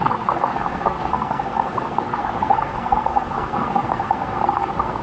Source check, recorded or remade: remade